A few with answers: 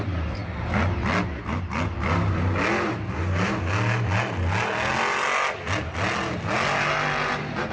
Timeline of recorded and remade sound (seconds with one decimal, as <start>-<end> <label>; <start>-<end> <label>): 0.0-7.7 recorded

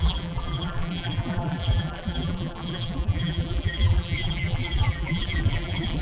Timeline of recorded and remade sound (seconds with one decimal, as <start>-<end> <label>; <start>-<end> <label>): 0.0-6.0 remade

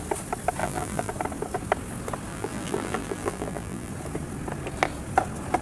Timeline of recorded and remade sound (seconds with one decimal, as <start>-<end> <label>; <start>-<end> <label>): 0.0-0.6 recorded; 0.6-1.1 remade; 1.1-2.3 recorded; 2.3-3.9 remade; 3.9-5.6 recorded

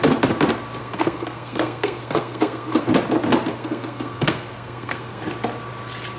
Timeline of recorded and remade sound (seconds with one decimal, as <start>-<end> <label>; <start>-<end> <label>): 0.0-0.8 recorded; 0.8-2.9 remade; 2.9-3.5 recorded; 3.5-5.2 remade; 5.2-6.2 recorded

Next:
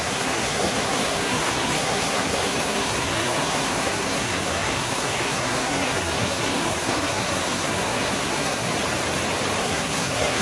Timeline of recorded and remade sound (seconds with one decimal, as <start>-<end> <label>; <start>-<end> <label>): 0.0-8.7 remade; 8.7-9.6 recorded; 9.6-10.4 remade